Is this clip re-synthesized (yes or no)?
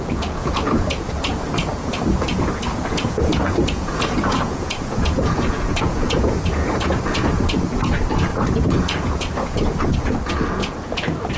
yes